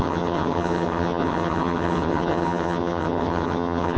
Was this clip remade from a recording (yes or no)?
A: yes